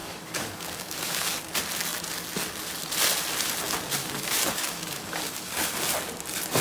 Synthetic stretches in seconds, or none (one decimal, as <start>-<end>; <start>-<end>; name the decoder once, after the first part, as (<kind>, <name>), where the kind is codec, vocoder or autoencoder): 0.0-1.4 (codec, DAC); 4.0-5.8